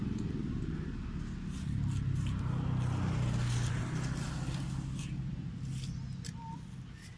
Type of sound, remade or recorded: recorded